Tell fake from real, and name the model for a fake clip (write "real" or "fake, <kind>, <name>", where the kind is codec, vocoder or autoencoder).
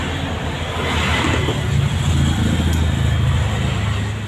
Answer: real